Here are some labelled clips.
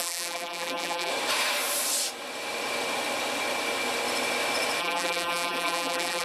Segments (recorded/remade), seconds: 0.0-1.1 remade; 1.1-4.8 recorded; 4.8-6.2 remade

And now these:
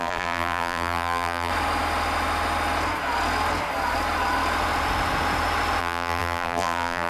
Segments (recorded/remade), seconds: 0.0-1.5 remade; 1.5-5.8 recorded; 5.8-7.1 remade

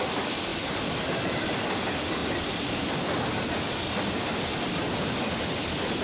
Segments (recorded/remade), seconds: 0.0-0.5 recorded; 0.5-1.0 remade; 1.0-2.2 recorded; 2.2-3.5 remade; 3.5-6.0 recorded

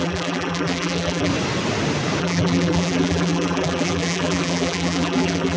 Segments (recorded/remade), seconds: 0.0-1.3 remade; 1.3-2.2 recorded; 2.2-5.6 remade

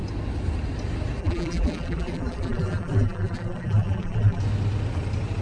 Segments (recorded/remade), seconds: 0.0-1.2 recorded; 1.2-4.4 remade; 4.4-5.4 recorded

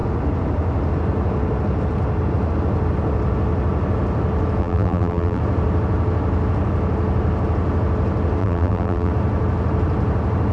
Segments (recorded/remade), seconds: 0.0-4.6 recorded; 4.6-5.4 remade; 5.4-8.4 recorded; 8.4-9.1 remade; 9.1-10.5 recorded

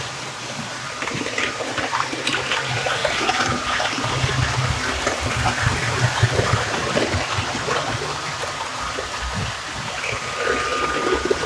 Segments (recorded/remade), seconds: 0.0-4.3 remade; 4.3-5.7 recorded; 5.7-10.7 remade; 10.7-11.5 recorded

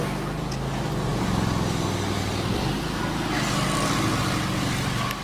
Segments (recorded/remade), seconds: 0.0-5.2 recorded